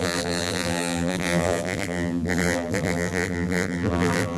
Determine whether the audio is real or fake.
fake